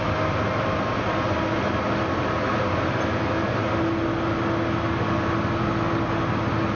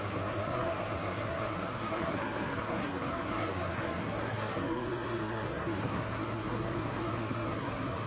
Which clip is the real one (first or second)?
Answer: first